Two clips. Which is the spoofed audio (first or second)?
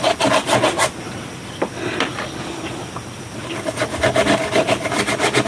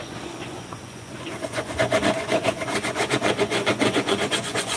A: second